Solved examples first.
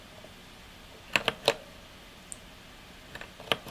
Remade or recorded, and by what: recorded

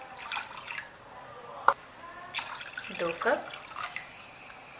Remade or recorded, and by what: recorded